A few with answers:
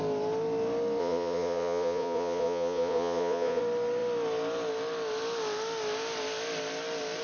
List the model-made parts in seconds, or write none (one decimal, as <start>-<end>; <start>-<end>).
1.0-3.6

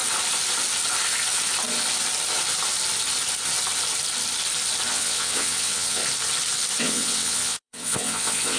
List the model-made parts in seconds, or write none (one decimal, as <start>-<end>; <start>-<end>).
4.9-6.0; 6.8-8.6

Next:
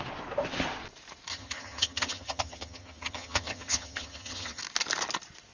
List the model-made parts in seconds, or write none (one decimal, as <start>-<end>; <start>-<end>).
1.3-4.6

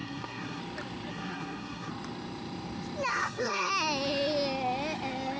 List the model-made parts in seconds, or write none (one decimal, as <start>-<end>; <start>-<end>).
0.0-0.6; 1.1-1.9; 3.1-3.7

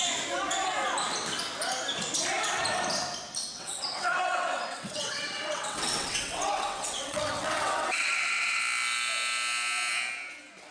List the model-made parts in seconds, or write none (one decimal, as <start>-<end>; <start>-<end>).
3.5-8.6

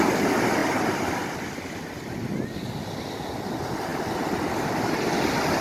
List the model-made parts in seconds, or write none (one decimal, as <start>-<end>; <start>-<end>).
none

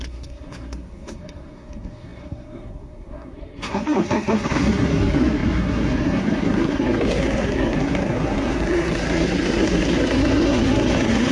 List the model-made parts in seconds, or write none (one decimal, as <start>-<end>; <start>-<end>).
0.0-11.3

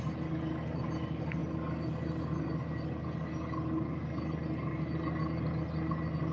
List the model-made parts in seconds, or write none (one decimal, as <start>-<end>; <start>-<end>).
none